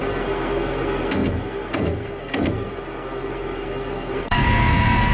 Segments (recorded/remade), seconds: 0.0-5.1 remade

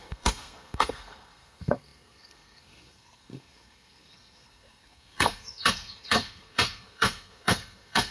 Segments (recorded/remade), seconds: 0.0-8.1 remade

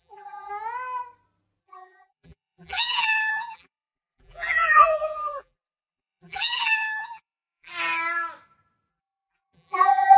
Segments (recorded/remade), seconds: 0.0-0.5 remade; 0.5-1.6 recorded; 1.6-7.7 remade; 7.7-8.9 recorded; 8.9-10.2 remade

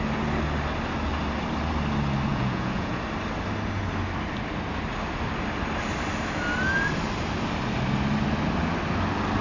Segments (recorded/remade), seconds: 0.0-2.3 recorded; 2.3-3.0 remade; 3.0-9.4 recorded

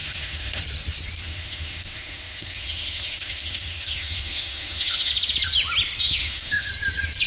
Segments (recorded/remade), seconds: 0.0-0.6 remade; 0.6-1.2 recorded; 1.2-5.1 remade; 5.1-6.2 recorded; 6.2-6.7 remade; 6.7-7.3 recorded